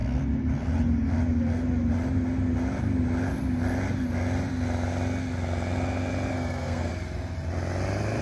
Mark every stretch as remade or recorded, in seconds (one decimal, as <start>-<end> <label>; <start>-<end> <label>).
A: 0.0-6.3 recorded; 6.3-6.9 remade; 6.9-8.2 recorded